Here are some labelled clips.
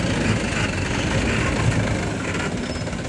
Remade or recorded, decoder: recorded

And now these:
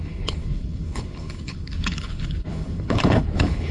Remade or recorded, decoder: remade, codec, HILCodec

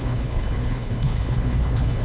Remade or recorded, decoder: remade, codec, HILCodec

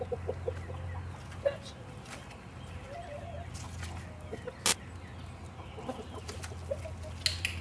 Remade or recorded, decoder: recorded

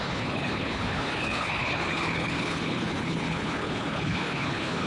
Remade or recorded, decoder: remade, codec, HILCodec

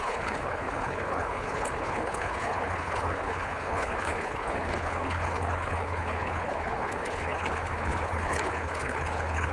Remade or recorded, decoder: remade, codec, HILCodec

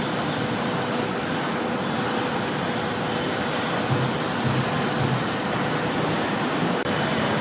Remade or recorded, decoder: recorded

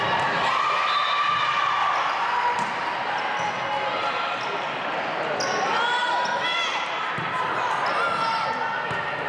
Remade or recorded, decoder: recorded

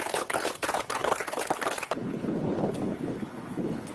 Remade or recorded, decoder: remade, codec, HILCodec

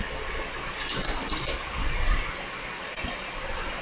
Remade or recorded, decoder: recorded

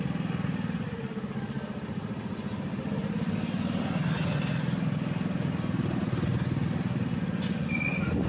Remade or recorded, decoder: recorded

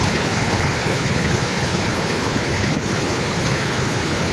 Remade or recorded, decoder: remade, codec, HILCodec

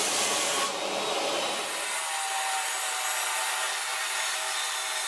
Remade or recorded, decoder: recorded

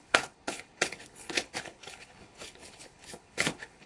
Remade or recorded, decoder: remade, codec, HILCodec